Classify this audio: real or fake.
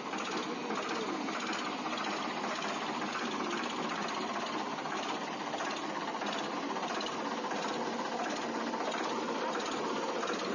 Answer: real